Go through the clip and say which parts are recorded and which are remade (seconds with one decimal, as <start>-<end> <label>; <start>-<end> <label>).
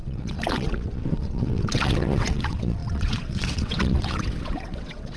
0.0-5.2 remade